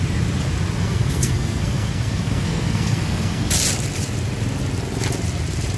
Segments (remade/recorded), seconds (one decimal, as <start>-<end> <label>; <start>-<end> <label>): 0.0-0.8 recorded; 0.8-3.5 remade; 3.5-5.8 recorded